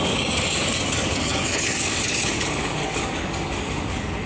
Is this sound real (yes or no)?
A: no